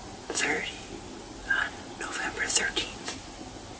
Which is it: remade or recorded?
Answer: recorded